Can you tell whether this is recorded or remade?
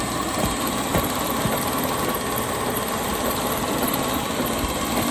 recorded